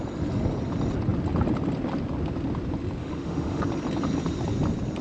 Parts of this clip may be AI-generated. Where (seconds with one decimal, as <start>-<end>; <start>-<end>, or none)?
3.0-3.6